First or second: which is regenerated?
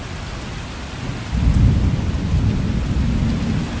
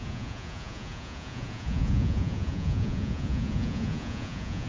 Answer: second